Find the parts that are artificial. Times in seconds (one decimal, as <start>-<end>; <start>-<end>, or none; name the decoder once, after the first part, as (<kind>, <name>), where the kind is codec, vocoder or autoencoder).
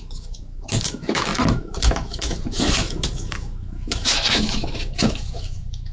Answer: 0.0-5.9 (autoencoder, DAC-VAE)